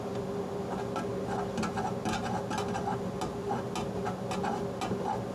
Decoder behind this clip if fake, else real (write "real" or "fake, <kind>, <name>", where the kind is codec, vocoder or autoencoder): real